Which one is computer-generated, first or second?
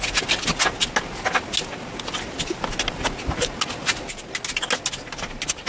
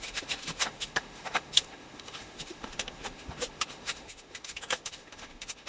second